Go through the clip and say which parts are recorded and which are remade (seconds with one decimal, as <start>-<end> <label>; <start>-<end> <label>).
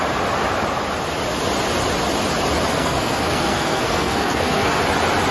0.0-2.7 recorded; 2.7-4.8 remade; 4.8-5.3 recorded